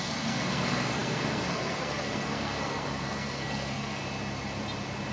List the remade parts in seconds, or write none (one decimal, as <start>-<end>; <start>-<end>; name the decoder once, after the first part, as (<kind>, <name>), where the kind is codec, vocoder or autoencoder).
0.0-4.0 (codec, SNAC)